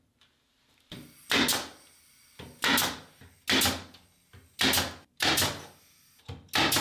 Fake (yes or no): no